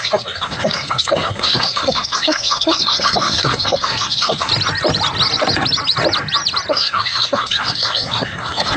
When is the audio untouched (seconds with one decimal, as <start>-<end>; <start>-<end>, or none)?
4.5-6.7

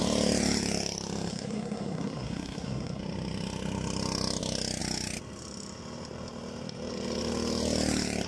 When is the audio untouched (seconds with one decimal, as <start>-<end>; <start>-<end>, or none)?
0.0-1.3; 3.0-8.3

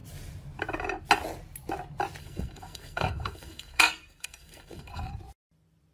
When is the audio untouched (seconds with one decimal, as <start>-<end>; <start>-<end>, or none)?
0.0-2.2; 5.1-5.9

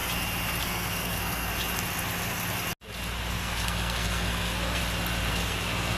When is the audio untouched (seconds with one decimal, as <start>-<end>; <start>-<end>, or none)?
0.0-0.6; 1.5-3.3; 4.8-5.3

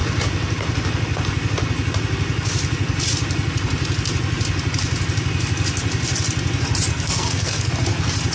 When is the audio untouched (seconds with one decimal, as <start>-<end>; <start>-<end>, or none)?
0.0-6.9; 7.7-8.3

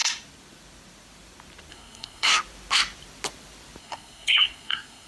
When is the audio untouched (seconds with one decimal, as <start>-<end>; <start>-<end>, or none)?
0.0-1.7; 2.3-3.8

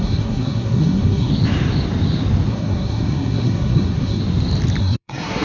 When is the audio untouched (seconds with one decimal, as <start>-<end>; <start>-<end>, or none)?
1.3-2.5; 4.2-4.8

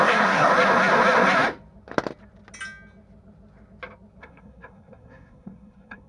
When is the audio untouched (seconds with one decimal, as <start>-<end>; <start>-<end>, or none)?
0.5-4.2